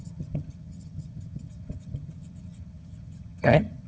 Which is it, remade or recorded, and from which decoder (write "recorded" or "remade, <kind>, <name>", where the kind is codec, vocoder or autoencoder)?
remade, vocoder, HiFi-GAN